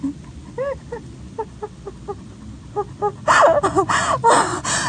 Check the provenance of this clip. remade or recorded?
recorded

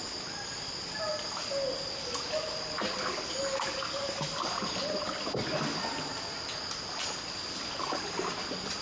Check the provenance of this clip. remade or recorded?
recorded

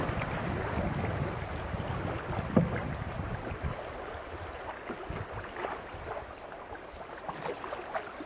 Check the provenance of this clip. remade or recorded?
recorded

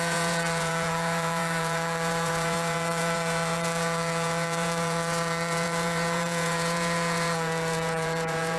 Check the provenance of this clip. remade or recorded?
remade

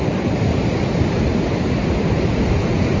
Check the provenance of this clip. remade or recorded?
recorded